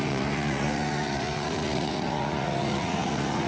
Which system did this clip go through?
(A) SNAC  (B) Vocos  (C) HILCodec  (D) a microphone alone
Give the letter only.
B